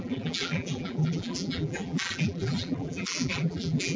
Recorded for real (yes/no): no